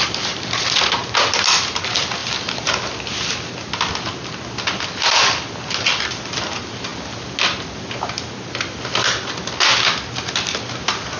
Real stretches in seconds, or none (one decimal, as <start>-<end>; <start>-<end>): 0.0-11.2